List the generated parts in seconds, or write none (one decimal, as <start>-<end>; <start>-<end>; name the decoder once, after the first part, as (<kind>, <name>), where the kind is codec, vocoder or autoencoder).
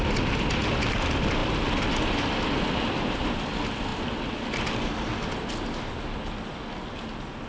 none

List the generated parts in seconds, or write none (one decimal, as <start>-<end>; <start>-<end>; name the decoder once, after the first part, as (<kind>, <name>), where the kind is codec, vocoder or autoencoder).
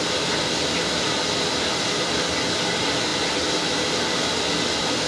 none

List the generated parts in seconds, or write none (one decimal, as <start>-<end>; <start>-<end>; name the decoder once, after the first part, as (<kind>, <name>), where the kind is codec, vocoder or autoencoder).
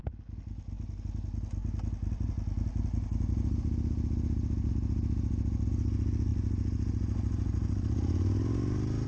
none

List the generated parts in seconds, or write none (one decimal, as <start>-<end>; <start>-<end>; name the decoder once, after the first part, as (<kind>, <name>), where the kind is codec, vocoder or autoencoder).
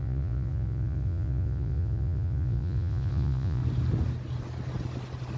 0.0-3.6 (vocoder, Vocos)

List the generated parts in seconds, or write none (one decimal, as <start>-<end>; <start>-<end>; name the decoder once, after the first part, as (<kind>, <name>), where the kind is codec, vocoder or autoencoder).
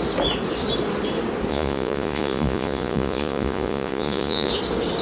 1.5-4.5 (vocoder, Vocos)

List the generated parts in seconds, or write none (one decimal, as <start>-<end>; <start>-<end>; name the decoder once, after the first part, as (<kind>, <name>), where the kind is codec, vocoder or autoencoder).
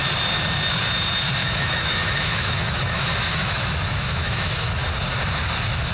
1.4-4.9 (autoencoder, DAC-VAE)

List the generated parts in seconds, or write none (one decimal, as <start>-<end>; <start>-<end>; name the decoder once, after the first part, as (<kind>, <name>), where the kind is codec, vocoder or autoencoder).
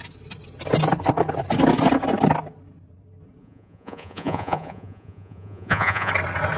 3.4-6.1 (vocoder, Vocos)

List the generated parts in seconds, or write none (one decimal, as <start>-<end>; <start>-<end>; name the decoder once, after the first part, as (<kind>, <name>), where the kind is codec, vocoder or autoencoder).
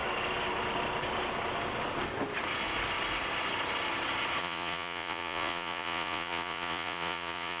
4.4-7.6 (vocoder, Vocos)